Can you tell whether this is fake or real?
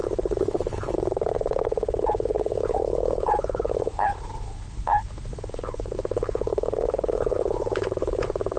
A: fake